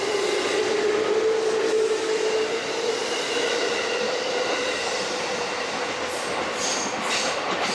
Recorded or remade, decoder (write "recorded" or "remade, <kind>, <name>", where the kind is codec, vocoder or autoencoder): recorded